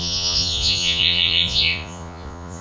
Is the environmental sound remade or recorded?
remade